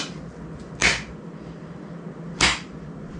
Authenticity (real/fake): real